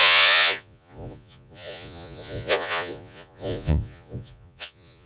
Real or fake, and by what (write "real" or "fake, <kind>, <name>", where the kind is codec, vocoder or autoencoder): fake, vocoder, Vocos